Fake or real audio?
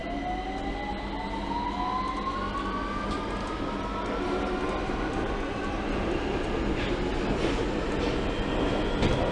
real